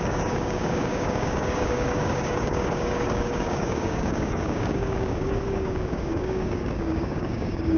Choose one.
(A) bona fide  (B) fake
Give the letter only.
B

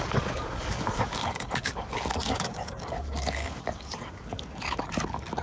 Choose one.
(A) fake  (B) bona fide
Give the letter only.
A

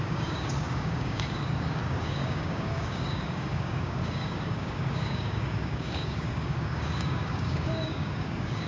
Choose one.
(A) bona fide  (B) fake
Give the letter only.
B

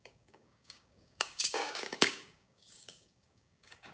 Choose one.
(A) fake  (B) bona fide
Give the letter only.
A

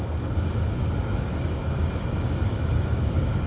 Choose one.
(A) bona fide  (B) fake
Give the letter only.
B